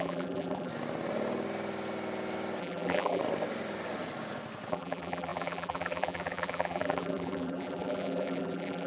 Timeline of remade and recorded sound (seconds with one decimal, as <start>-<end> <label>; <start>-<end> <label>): 0.0-0.7 remade; 0.7-2.6 recorded; 2.6-3.2 remade; 3.2-4.7 recorded; 4.7-8.9 remade

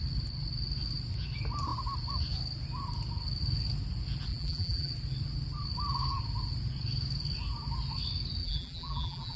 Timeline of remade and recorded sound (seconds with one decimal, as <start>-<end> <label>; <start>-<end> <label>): 0.0-4.3 recorded; 4.3-4.9 remade; 4.9-8.4 recorded; 8.4-9.4 remade

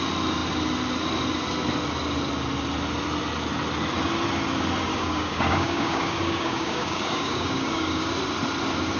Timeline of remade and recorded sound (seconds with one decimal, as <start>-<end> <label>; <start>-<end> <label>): 0.0-4.9 recorded; 4.9-8.1 remade; 8.1-9.0 recorded

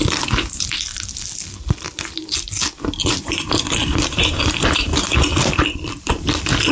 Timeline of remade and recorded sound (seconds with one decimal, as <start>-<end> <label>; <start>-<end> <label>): 0.0-3.0 recorded; 3.0-5.5 remade; 5.5-6.7 recorded

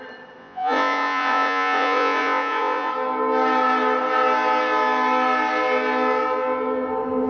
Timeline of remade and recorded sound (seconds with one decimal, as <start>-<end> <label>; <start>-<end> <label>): 0.0-0.4 recorded; 0.4-2.9 remade; 2.9-7.3 recorded

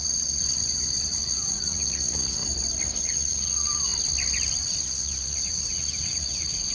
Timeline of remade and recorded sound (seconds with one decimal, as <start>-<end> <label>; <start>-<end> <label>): 0.0-2.4 remade; 2.4-3.0 recorded; 3.0-3.9 remade; 3.9-4.6 recorded; 4.6-6.7 remade

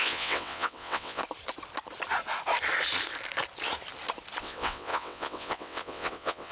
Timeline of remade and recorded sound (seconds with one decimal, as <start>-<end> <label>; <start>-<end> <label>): 0.0-1.2 remade; 1.2-4.4 recorded; 4.4-6.5 remade